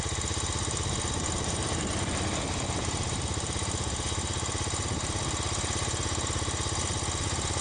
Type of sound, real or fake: real